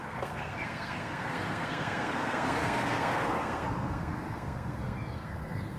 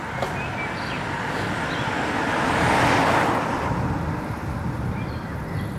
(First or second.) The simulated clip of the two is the first